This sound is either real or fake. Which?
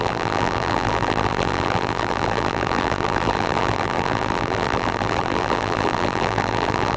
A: fake